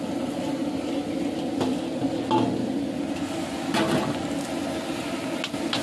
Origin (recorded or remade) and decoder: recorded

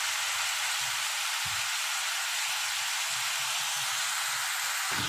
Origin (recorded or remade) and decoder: recorded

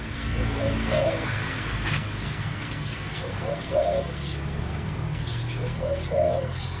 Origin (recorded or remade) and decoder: remade, codec, SNAC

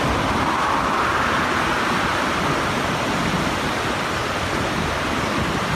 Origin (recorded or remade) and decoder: recorded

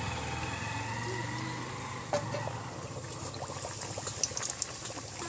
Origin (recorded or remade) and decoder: recorded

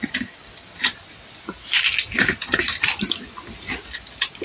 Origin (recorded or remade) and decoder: recorded